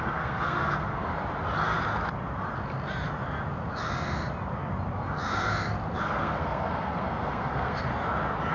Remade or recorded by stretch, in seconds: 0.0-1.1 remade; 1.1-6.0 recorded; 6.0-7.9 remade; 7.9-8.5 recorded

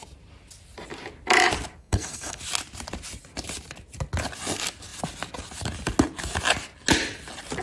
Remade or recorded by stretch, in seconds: 0.0-1.8 recorded; 1.8-2.4 remade; 2.4-7.6 recorded

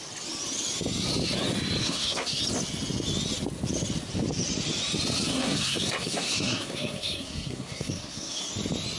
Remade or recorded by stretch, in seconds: 0.0-1.8 recorded; 1.8-2.4 remade; 2.4-5.3 recorded; 5.3-8.4 remade; 8.4-9.0 recorded